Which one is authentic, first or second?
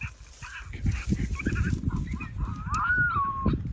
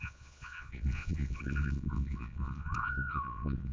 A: first